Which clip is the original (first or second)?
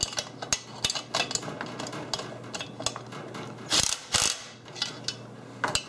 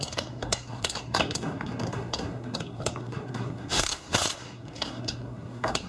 first